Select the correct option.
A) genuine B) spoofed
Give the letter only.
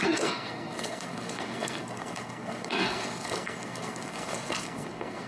B